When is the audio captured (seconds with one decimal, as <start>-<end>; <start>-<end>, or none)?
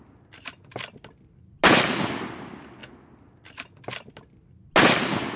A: 0.0-5.4